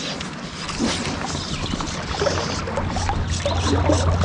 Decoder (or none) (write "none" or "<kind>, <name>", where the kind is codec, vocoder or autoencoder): none